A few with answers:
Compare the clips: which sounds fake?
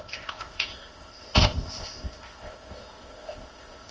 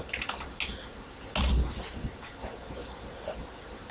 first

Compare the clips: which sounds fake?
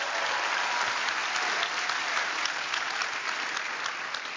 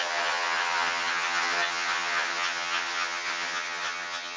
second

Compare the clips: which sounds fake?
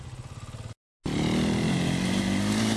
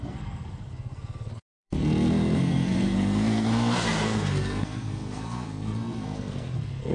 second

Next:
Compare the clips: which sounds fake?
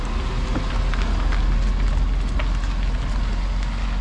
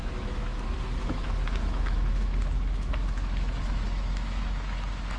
second